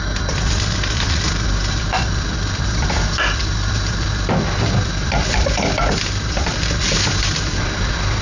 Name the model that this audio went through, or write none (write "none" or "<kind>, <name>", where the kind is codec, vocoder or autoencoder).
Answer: vocoder, BigVGAN v2